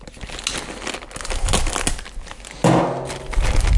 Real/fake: real